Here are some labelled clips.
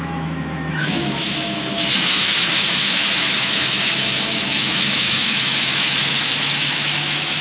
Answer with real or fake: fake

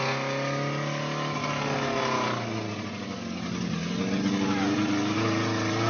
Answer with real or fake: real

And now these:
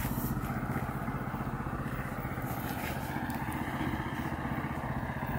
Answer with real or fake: real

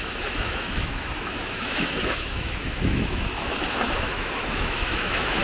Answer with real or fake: fake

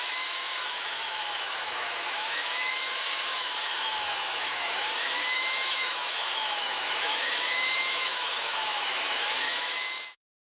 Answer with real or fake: fake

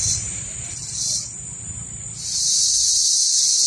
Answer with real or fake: real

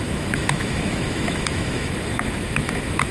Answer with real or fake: fake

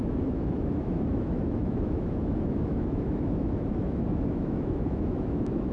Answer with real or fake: fake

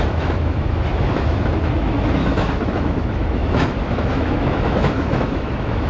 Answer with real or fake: fake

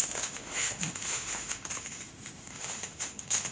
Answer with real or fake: fake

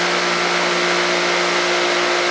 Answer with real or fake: real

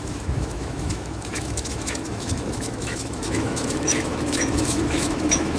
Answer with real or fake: fake